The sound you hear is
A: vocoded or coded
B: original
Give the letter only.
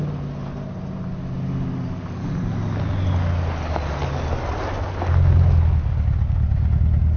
B